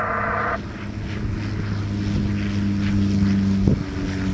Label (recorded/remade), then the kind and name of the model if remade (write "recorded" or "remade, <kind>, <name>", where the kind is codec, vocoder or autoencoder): recorded